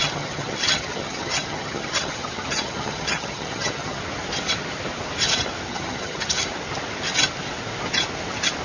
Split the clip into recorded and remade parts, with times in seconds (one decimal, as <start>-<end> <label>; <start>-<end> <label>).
0.0-4.0 remade; 4.0-5.7 recorded; 5.7-6.4 remade; 6.4-8.6 recorded